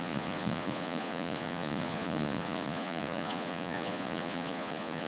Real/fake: fake